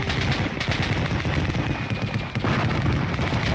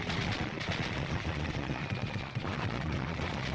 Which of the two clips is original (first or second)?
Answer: first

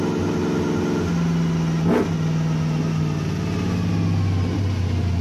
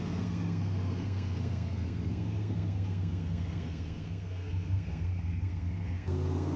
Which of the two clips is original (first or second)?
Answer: first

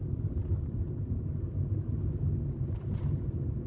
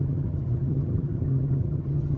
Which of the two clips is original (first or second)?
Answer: first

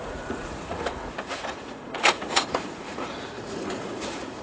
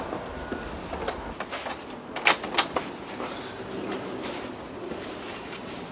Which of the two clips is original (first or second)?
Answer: second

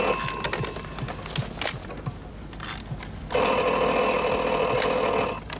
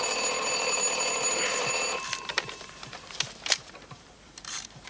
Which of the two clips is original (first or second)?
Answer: first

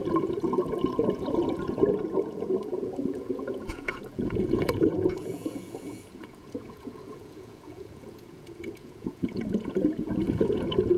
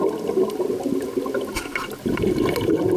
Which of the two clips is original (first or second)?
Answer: second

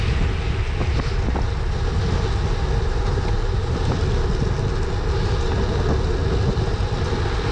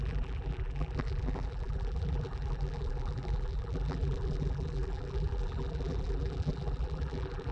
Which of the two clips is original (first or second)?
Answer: first